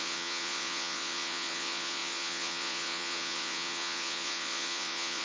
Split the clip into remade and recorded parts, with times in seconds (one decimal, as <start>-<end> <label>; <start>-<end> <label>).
0.0-5.2 remade